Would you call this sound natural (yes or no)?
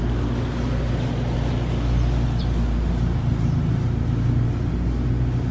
yes